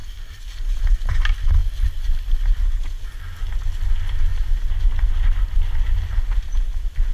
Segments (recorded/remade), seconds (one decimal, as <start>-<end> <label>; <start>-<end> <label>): 0.0-7.1 recorded